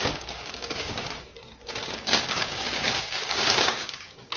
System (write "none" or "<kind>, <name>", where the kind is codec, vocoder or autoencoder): codec, DAC